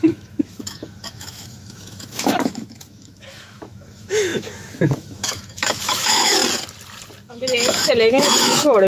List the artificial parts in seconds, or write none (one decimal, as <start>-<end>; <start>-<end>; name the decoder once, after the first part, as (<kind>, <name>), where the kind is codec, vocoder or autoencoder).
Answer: 0.0-6.4 (autoencoder, DAC-VAE); 7.3-8.9